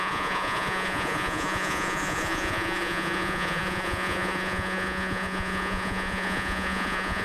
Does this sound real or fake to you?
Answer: fake